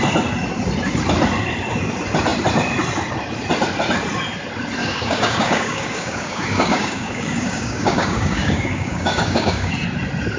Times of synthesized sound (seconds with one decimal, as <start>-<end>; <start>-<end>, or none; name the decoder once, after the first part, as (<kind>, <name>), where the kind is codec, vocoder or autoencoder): 4.8-9.7 (codec, DAC)